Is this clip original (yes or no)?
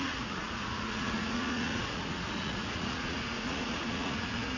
no